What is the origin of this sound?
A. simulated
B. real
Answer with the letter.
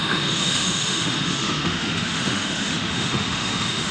A